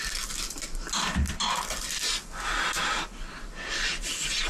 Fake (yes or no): no